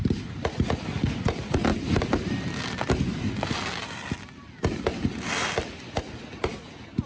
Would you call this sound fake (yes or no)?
no